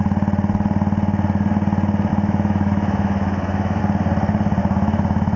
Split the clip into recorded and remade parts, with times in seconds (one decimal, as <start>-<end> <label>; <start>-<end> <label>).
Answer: 0.0-2.1 recorded; 2.1-3.8 remade; 3.8-4.6 recorded; 4.6-5.4 remade